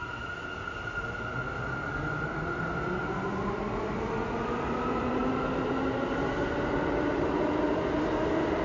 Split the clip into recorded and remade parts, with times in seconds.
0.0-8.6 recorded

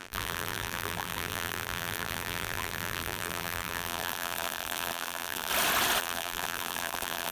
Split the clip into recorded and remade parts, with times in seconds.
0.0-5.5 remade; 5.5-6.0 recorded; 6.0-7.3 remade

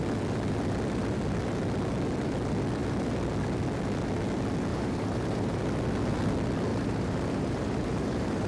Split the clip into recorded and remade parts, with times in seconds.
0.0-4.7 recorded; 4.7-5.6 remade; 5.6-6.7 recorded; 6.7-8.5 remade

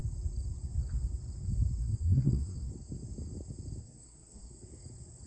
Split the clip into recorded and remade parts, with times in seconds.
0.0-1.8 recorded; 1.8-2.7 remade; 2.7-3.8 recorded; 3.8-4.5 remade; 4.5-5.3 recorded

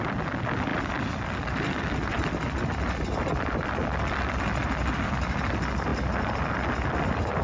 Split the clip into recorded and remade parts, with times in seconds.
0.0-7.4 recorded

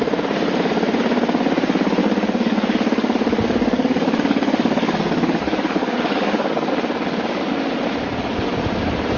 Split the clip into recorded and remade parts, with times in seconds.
0.0-2.0 recorded; 2.0-6.7 remade; 6.7-9.2 recorded

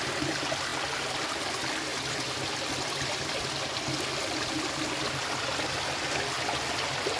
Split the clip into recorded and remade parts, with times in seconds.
0.0-7.2 recorded

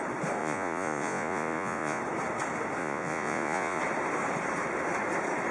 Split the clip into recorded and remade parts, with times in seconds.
0.0-0.4 recorded; 0.4-2.0 remade; 2.0-2.8 recorded; 2.8-3.8 remade; 3.8-5.5 recorded